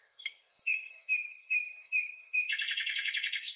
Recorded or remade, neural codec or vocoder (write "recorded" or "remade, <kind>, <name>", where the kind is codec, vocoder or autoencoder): remade, codec, SNAC